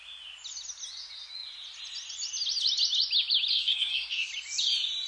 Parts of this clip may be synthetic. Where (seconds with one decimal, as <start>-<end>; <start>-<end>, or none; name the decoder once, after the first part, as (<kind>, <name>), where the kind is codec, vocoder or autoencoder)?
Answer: 3.5-4.3 (codec, SNAC)